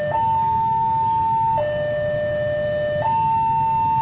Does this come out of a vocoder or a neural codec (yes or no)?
no